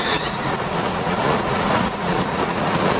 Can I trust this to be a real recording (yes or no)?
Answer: no